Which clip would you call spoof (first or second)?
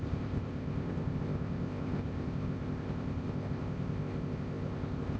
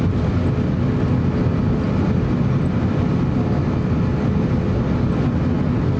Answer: first